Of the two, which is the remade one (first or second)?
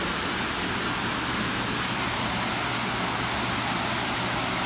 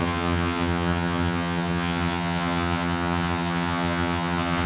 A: second